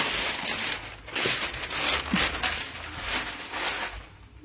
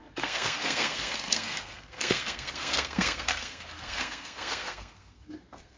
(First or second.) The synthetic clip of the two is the second